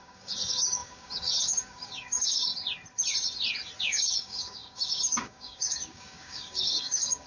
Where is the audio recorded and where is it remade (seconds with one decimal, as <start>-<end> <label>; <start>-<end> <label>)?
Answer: 0.0-2.5 remade; 2.5-3.8 recorded; 3.8-7.3 remade